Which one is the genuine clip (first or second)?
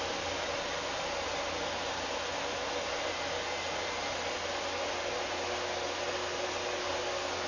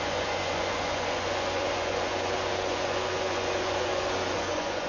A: first